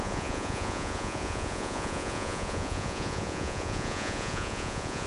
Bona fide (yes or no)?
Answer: no